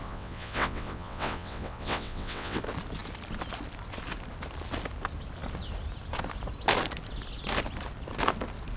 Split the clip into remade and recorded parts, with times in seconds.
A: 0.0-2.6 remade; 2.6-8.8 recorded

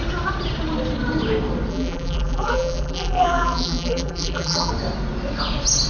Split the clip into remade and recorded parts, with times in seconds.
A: 0.0-1.7 recorded; 1.7-4.7 remade; 4.7-5.9 recorded

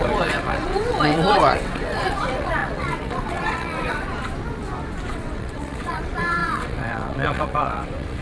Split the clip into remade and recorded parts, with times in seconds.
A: 0.0-4.1 remade; 4.1-5.1 recorded; 5.1-8.2 remade

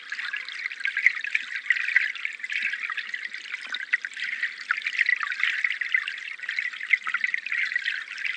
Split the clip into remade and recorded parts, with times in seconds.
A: 0.0-8.4 recorded

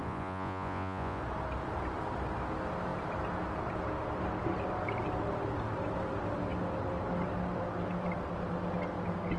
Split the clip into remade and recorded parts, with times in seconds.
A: 0.0-1.2 remade; 1.2-9.4 recorded

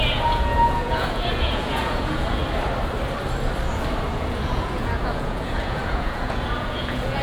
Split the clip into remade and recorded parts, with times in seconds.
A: 0.0-2.4 remade; 2.4-4.1 recorded; 4.1-7.2 remade

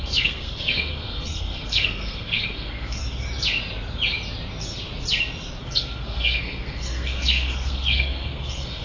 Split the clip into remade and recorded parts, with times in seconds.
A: 0.0-3.0 remade; 3.0-5.6 recorded; 5.6-8.8 remade